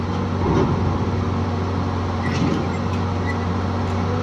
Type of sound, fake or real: real